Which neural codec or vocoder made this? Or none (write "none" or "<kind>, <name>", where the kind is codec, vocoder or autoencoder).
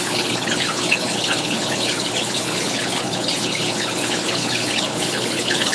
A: codec, HILCodec